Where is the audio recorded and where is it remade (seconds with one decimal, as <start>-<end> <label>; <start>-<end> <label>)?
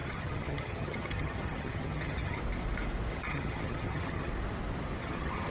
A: 0.0-2.4 remade; 2.4-3.1 recorded; 3.1-4.3 remade; 4.3-5.0 recorded; 5.0-5.5 remade